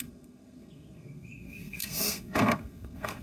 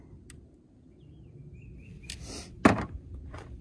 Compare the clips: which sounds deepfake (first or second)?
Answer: first